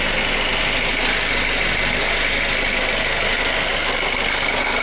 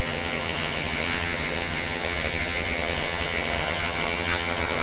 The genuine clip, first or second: first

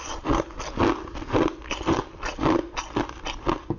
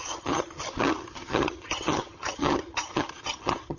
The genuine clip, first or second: first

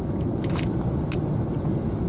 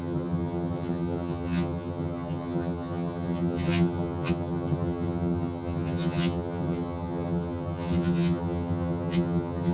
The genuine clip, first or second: first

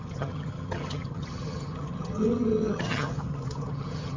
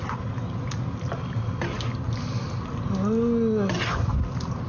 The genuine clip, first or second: second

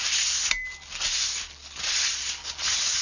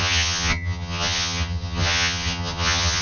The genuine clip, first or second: first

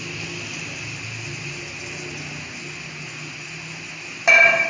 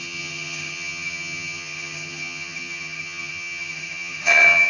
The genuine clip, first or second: first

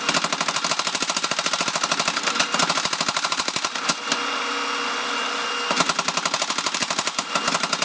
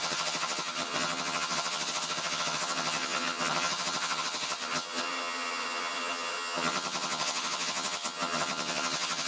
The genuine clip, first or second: first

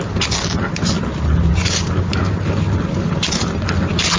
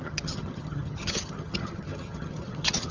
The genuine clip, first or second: first